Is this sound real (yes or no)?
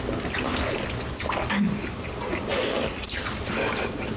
yes